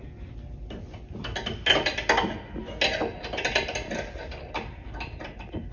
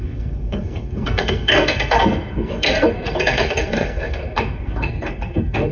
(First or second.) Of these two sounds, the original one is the first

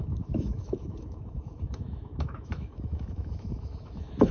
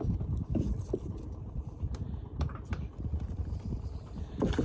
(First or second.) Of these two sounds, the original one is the second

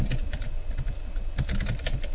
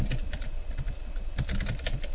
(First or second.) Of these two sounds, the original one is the first